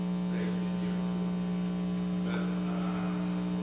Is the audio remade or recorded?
recorded